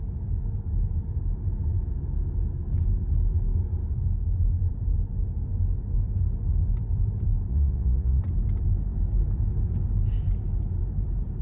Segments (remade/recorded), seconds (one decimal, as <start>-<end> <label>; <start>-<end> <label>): 0.0-7.5 recorded; 7.5-8.2 remade; 8.2-11.4 recorded